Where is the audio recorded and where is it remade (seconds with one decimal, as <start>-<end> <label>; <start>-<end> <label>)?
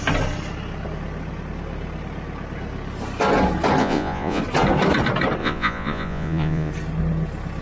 0.0-3.8 recorded; 3.8-4.4 remade; 4.4-5.4 recorded; 5.4-6.7 remade; 6.7-7.6 recorded